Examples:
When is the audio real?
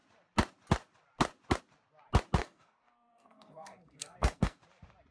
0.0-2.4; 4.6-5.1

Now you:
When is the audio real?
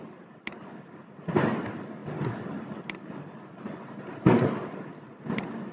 0.0-5.7